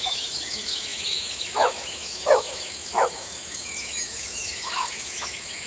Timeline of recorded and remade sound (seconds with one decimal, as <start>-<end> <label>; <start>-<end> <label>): 0.0-5.7 remade